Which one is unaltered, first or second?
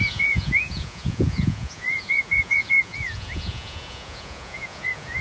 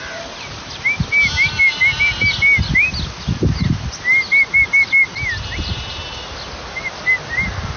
second